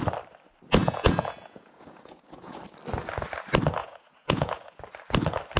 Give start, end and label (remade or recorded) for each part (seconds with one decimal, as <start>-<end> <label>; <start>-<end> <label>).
0.0-0.8 recorded; 0.8-2.6 remade; 2.6-3.8 recorded; 3.8-4.8 remade; 4.8-5.6 recorded